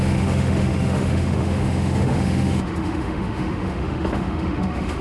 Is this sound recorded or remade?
remade